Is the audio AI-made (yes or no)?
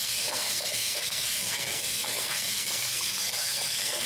yes